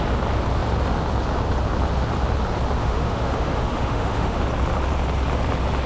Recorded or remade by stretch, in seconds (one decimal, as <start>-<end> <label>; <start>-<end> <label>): 0.0-2.8 recorded; 2.8-4.4 remade; 4.4-5.9 recorded